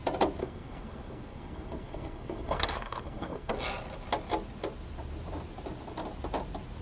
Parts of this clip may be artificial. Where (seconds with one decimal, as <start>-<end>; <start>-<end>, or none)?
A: 0.4-3.5